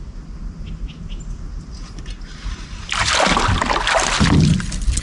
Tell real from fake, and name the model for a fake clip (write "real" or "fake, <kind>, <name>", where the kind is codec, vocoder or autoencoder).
real